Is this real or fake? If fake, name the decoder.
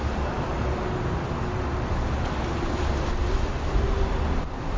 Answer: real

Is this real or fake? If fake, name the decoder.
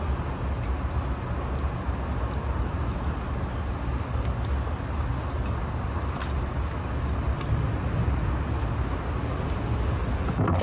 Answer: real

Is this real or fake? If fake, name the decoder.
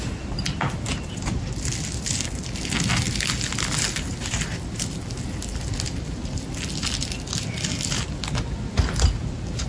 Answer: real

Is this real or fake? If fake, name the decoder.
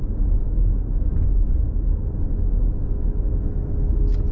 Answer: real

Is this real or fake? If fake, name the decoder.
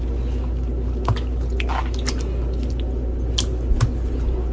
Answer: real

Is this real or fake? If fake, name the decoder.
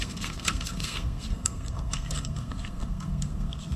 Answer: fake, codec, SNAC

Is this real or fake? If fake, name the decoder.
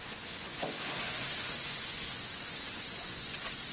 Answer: fake, vocoder, Vocos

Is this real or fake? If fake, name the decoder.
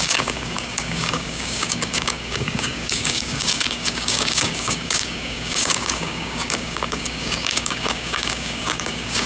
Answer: fake, codec, DAC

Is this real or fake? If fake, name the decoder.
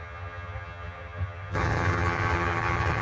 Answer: fake, vocoder, HiFi-GAN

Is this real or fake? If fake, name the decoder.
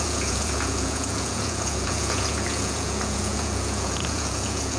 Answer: fake, vocoder, Vocos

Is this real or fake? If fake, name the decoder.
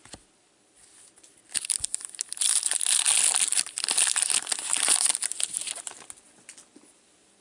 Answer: real